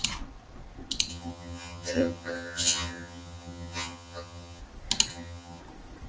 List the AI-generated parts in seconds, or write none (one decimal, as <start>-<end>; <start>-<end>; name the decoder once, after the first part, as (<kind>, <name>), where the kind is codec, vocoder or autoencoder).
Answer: 1.1-4.6 (vocoder, HiFi-GAN); 5.1-5.6